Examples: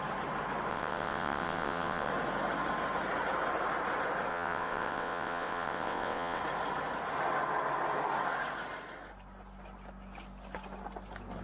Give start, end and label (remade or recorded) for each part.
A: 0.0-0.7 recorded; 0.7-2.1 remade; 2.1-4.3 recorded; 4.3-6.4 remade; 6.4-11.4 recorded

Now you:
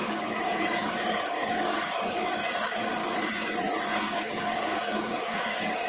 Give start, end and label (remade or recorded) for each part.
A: 0.0-3.0 remade; 3.0-4.2 recorded; 4.2-5.9 remade

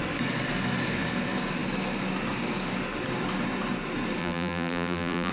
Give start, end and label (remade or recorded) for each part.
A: 0.0-4.2 recorded; 4.2-5.3 remade

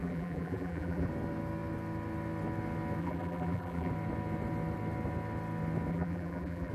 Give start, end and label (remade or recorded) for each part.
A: 0.0-1.1 remade; 1.1-3.0 recorded; 3.0-3.9 remade; 3.9-5.9 recorded; 5.9-6.7 remade

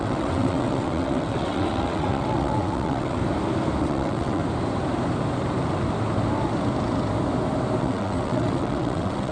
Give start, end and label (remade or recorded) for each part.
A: 0.0-3.2 remade; 3.2-3.8 recorded; 3.8-4.4 remade; 4.4-7.8 recorded; 7.8-9.3 remade

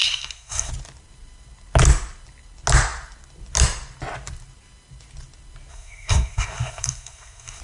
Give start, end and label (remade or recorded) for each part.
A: 0.0-0.7 remade; 0.7-5.7 recorded; 5.7-7.6 remade